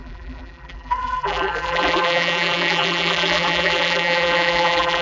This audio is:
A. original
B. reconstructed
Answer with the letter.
B